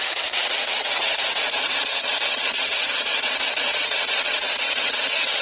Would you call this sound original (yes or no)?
no